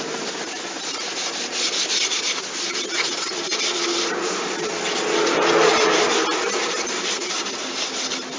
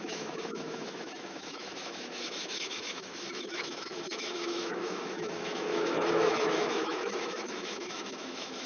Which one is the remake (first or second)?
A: second